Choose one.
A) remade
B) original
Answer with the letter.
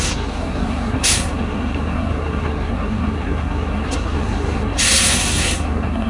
A